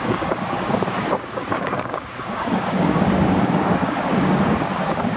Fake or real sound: fake